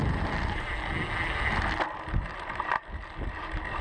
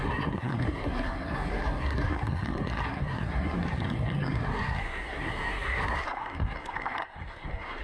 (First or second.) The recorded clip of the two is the first